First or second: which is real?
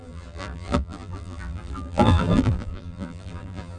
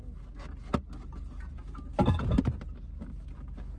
second